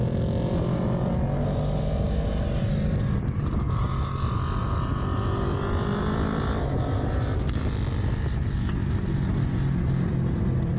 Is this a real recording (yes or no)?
yes